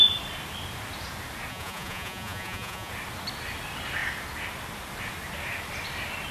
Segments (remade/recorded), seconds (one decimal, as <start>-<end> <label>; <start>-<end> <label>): 0.0-1.5 recorded; 1.5-2.9 remade; 2.9-6.3 recorded